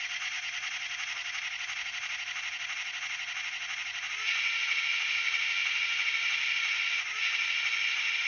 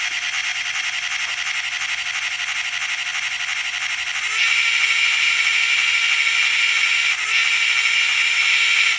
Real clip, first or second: second